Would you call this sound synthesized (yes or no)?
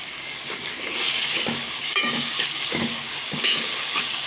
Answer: yes